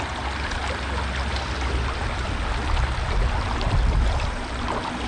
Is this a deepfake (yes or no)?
no